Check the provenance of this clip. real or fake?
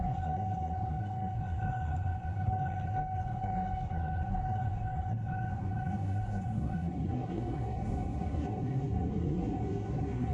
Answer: fake